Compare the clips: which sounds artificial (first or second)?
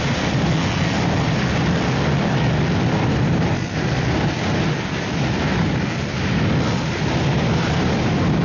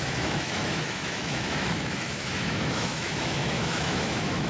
second